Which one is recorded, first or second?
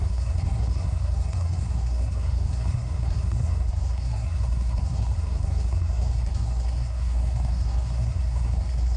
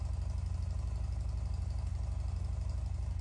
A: second